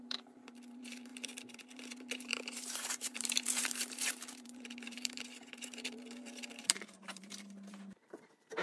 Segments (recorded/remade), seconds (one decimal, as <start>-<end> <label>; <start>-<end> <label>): 0.0-8.6 remade